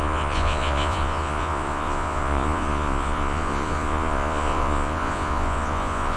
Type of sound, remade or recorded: remade